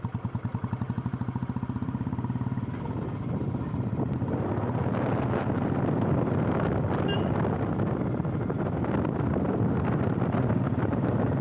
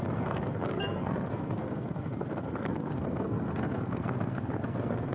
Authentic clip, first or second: first